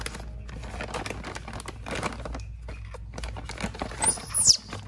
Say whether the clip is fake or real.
real